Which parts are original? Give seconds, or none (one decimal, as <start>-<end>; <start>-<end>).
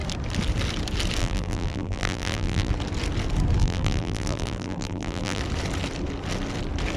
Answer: 0.0-1.2; 2.7-3.6; 5.4-7.0